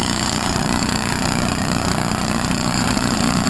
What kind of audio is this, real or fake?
fake